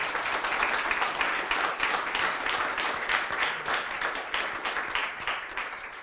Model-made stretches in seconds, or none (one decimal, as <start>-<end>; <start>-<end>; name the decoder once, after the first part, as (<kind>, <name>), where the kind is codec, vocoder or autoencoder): 5.0-6.0 (vocoder, BigVGAN v2)